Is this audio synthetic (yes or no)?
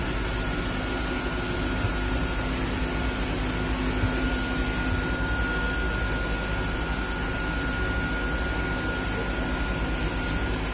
no